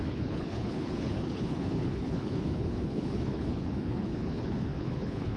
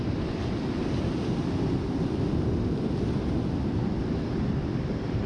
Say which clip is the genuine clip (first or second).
second